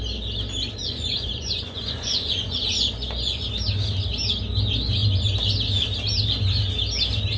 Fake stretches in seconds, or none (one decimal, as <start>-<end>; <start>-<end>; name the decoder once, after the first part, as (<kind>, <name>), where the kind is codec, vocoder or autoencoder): 0.8-3.5 (vocoder, Vocos)